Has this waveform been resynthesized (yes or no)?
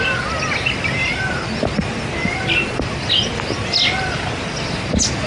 no